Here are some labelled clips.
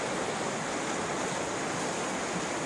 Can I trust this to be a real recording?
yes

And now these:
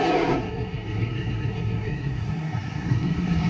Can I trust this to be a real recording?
no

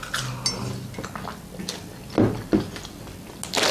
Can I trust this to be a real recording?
yes